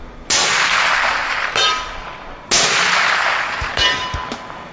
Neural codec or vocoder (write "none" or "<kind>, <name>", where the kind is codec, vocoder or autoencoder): none